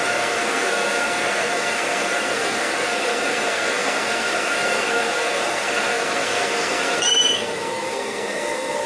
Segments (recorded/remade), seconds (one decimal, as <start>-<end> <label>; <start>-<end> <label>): 0.0-8.9 remade